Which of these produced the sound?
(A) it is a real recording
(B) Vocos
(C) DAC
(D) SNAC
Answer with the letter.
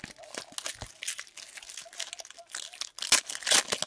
A